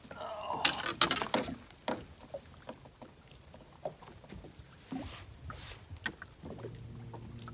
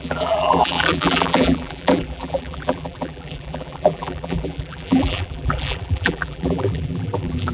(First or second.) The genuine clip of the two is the first